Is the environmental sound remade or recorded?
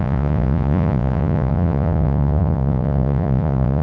remade